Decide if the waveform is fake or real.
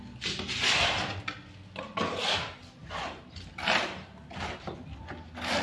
real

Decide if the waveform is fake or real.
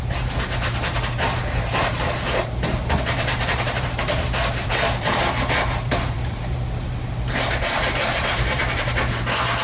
fake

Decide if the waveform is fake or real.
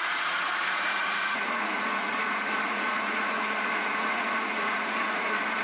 fake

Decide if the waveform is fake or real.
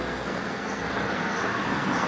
fake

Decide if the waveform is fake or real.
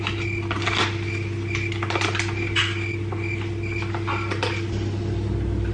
real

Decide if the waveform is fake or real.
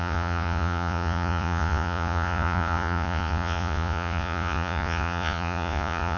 fake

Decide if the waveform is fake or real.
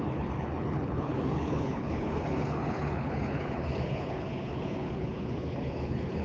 fake